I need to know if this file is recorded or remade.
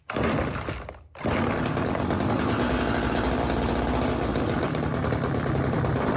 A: recorded